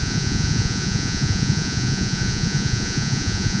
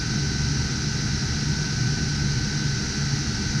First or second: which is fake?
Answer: first